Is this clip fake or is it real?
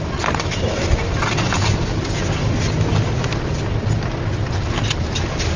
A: real